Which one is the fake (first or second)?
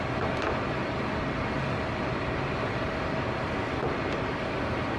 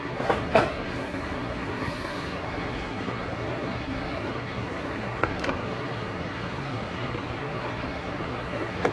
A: second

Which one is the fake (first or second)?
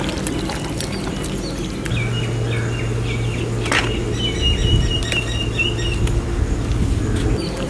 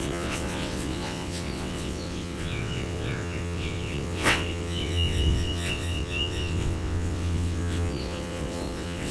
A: second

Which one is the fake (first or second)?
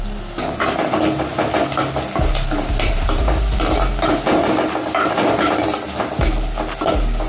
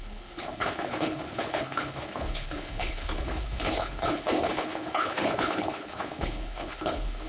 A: second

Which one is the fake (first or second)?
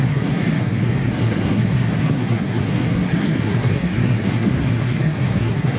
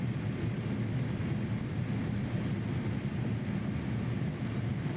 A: first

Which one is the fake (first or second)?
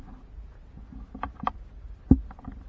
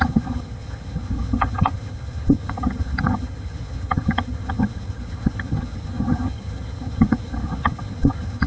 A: second